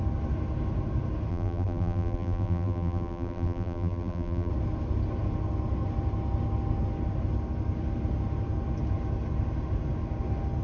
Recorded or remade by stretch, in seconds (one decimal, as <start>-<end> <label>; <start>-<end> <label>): 0.0-1.3 recorded; 1.3-4.5 remade; 4.5-10.6 recorded